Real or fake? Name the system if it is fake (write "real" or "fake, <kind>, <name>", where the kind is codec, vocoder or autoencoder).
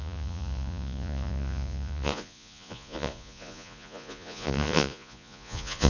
fake, vocoder, Vocos